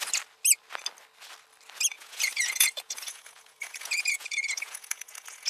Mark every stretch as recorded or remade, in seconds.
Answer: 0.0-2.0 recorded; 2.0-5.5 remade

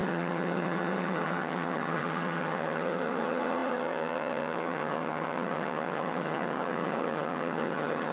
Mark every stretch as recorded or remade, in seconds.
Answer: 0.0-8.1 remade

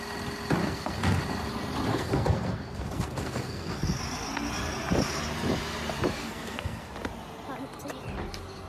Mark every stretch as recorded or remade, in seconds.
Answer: 0.0-0.6 recorded; 0.6-1.2 remade; 1.2-1.9 recorded; 1.9-4.0 remade; 4.0-6.2 recorded; 6.2-6.9 remade; 6.9-8.7 recorded

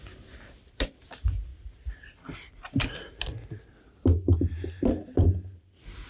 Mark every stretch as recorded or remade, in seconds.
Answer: 0.0-6.1 recorded

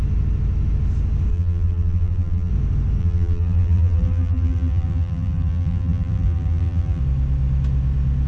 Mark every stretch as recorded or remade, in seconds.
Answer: 0.0-1.3 recorded; 1.3-2.5 remade; 2.5-3.0 recorded; 3.0-7.0 remade; 7.0-8.3 recorded